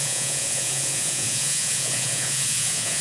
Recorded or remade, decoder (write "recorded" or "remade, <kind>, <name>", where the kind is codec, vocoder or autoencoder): remade, vocoder, Vocos